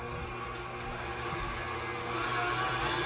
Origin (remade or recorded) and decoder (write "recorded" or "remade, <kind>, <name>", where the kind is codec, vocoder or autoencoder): recorded